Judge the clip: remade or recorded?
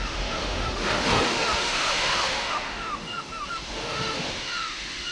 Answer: remade